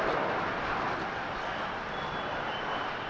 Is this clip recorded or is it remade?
recorded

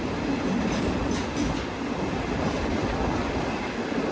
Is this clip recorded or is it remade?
recorded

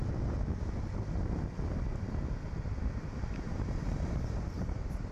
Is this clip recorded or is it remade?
recorded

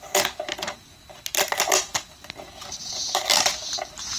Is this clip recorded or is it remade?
recorded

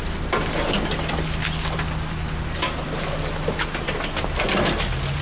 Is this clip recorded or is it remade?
recorded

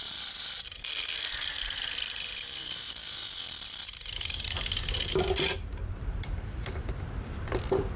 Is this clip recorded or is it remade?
remade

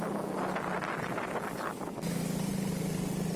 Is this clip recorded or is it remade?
recorded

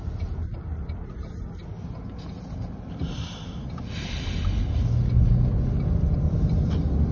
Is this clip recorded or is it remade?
recorded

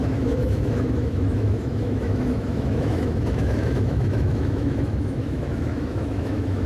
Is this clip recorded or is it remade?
remade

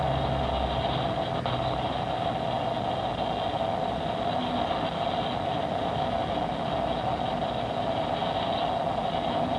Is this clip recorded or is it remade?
recorded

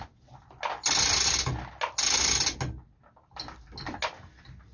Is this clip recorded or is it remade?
recorded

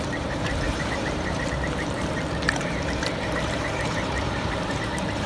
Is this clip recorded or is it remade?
remade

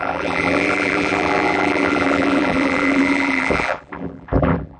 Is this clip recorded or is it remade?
remade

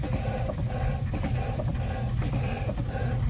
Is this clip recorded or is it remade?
recorded